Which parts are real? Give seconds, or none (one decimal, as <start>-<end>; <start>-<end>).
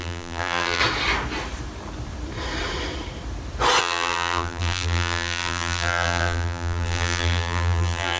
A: 0.8-3.8